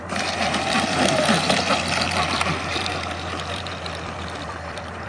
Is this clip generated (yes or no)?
yes